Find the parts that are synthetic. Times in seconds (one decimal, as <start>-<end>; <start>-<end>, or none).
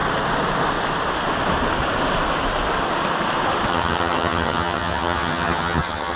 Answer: 3.7-6.2